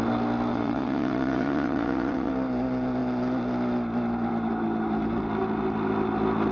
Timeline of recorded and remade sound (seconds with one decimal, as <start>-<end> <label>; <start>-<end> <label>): 0.0-0.5 recorded; 0.5-2.3 remade; 2.3-6.5 recorded